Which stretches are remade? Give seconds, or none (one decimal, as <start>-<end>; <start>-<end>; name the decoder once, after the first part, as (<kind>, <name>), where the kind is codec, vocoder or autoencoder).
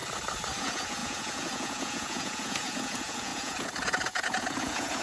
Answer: 0.6-5.0 (vocoder, Vocos)